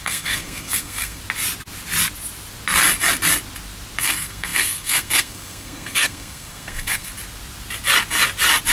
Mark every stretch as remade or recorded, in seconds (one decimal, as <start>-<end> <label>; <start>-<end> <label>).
0.0-1.2 remade; 1.2-4.0 recorded; 4.0-7.1 remade; 7.1-8.7 recorded